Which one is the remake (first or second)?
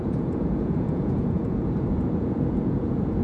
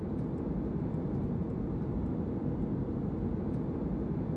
first